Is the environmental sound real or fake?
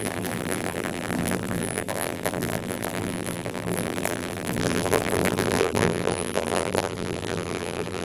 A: fake